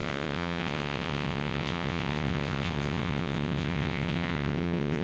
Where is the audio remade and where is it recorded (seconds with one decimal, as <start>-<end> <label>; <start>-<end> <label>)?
0.0-5.0 remade